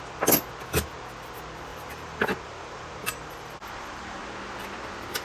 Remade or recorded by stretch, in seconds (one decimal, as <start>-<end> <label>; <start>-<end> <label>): 0.0-1.7 recorded; 1.7-4.2 remade; 4.2-5.2 recorded